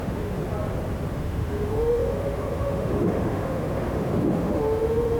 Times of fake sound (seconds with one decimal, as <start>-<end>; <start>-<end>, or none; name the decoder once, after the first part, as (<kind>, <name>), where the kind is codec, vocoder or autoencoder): 0.0-0.4 (autoencoder, DAC-VAE); 1.1-5.2